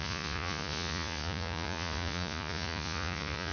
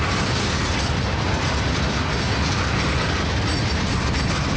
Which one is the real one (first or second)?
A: second